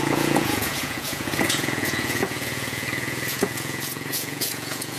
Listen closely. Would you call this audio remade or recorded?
remade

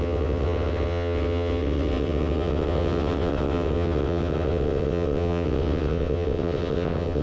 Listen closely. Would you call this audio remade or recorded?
remade